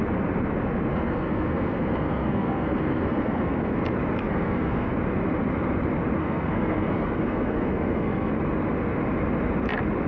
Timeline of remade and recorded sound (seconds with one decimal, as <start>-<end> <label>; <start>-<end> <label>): 0.0-0.9 recorded; 0.9-3.8 remade; 3.8-4.3 recorded; 4.3-4.9 remade; 4.9-6.2 recorded; 6.2-8.3 remade; 8.3-10.1 recorded